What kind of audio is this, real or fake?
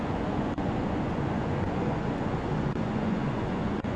fake